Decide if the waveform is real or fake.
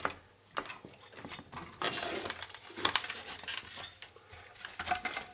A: real